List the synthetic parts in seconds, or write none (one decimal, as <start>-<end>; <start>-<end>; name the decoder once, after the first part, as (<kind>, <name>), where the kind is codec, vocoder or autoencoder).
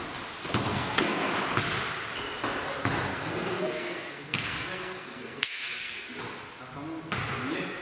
0.7-1.3 (codec, SNAC); 3.1-6.1